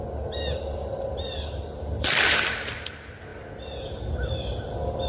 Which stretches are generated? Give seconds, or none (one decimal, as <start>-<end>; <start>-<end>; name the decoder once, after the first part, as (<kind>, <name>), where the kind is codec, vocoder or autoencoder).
0.8-2.3 (vocoder, BigVGAN v2); 3.3-5.1